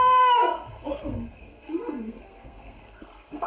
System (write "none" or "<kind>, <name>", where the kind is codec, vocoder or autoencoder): codec, SNAC